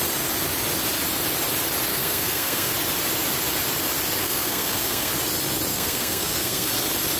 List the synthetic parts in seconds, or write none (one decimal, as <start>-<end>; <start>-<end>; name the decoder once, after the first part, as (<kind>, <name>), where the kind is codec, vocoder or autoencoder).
1.9-2.7 (codec, SNAC); 4.2-5.1; 5.7-6.7